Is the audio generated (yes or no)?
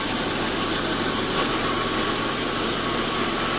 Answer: no